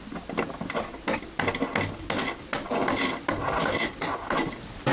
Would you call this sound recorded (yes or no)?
yes